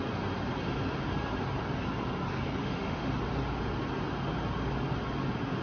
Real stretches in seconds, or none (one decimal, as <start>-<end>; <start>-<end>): 0.0-2.6; 3.1-5.6